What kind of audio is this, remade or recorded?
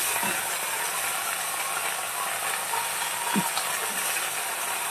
recorded